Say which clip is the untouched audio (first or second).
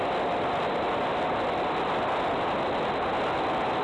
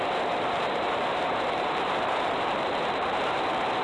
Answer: first